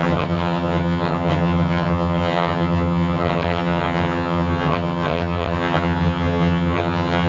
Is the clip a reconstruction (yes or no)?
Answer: yes